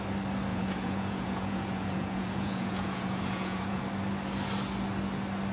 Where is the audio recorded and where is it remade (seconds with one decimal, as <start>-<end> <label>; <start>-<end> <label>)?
0.0-0.5 recorded; 0.5-3.8 remade; 3.8-5.5 recorded